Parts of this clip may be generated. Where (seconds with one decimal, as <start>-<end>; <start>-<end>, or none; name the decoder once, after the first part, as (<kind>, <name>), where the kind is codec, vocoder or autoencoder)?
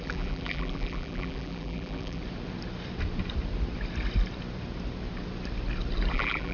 0.0-2.2 (vocoder, BigVGAN v2); 6.1-6.5